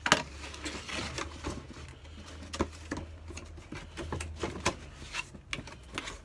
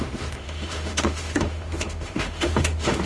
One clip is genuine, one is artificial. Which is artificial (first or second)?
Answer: second